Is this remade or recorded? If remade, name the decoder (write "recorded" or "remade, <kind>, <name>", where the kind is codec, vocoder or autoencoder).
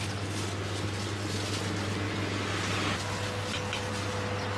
recorded